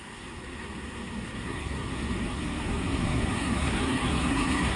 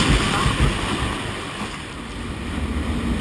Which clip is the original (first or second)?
second